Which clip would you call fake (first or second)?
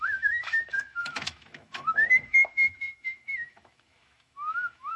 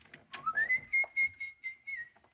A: first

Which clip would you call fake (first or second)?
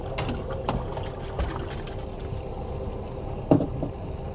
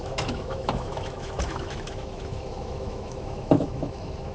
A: second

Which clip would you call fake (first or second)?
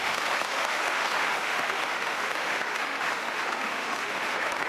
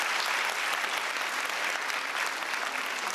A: first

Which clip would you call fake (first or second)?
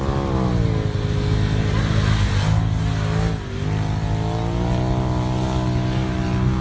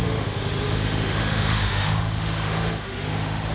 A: second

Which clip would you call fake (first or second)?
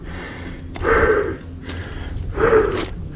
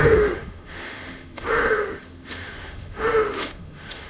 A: second